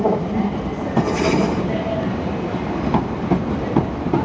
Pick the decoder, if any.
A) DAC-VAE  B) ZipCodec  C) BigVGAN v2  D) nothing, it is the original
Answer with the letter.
D